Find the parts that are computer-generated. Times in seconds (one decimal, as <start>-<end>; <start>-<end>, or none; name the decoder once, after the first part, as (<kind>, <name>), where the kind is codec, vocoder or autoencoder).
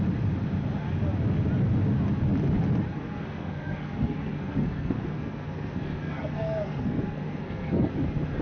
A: 2.9-7.9 (codec, SNAC)